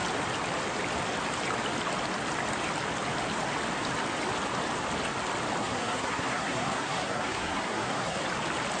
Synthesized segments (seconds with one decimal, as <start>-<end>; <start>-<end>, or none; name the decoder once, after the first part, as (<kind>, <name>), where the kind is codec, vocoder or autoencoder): 5.6-8.2 (codec, SNAC)